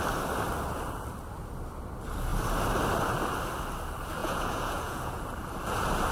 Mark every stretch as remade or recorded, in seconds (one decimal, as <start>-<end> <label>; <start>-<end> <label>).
0.0-4.2 recorded; 4.2-5.2 remade; 5.2-6.1 recorded